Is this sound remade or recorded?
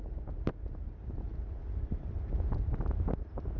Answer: recorded